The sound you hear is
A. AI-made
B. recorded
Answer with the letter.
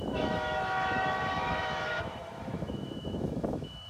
A